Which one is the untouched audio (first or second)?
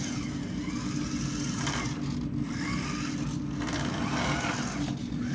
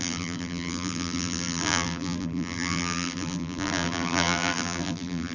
first